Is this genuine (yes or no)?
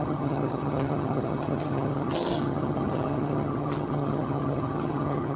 no